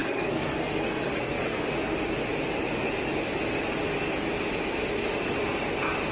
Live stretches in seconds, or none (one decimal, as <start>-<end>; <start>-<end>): 1.6-6.1